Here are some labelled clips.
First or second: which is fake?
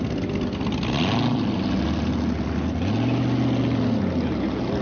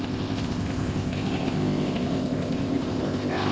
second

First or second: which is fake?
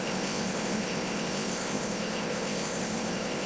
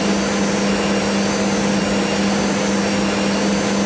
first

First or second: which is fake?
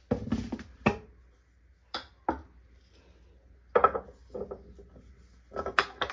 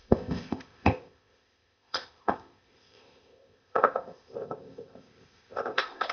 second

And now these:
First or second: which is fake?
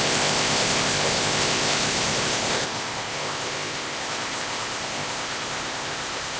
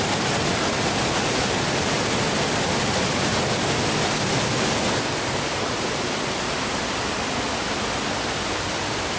first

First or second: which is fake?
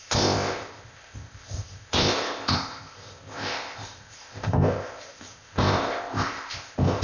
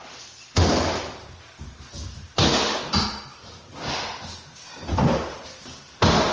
first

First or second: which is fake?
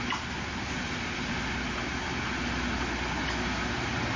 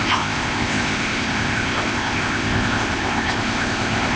second